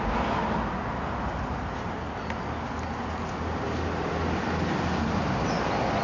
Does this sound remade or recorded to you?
recorded